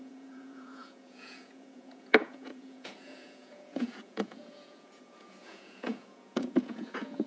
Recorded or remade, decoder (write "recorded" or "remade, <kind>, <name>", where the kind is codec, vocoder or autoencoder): remade, vocoder, Vocos